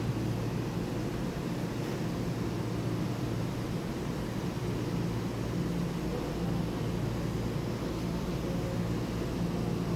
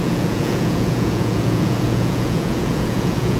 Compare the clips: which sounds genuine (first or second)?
first